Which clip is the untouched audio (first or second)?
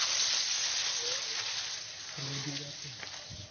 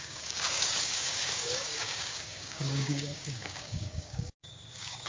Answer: first